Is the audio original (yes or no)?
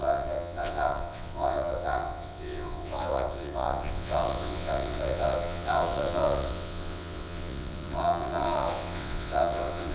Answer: no